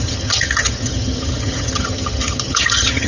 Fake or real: fake